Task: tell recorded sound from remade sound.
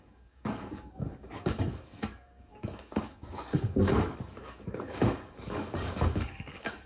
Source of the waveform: remade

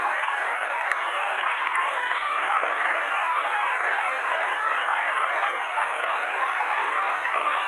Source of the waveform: remade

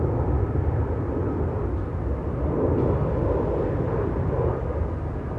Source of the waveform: recorded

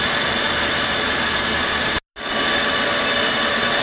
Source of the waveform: recorded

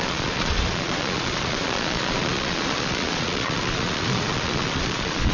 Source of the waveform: remade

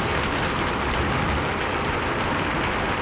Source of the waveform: recorded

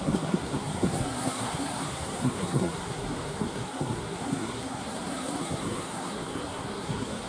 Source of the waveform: remade